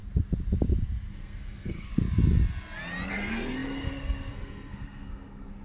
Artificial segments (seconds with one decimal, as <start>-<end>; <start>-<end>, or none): 1.1-1.9; 3.1-5.6